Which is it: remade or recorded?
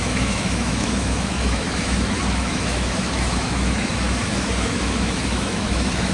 remade